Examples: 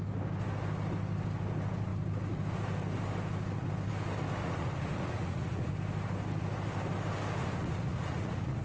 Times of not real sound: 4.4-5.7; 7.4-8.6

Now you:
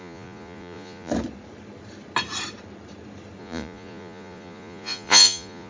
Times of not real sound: 0.0-1.1; 3.4-5.7

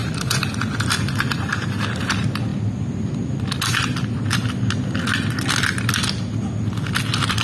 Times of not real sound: none

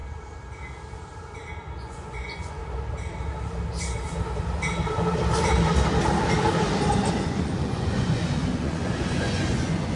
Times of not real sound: 1.8-2.6; 7.1-10.0

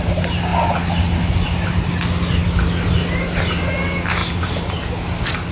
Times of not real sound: none

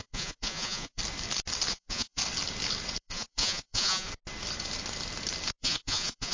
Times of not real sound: 0.0-1.0; 1.7-2.2; 3.0-4.1; 5.6-6.3

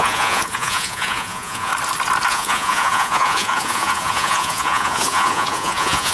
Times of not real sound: 0.0-1.7; 2.3-6.1

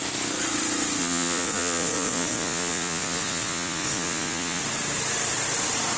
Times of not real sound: 1.0-4.6